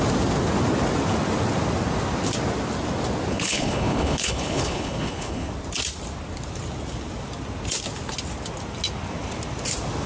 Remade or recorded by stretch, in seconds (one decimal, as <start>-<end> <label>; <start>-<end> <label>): 0.0-3.3 recorded; 3.3-5.5 remade; 5.5-10.1 recorded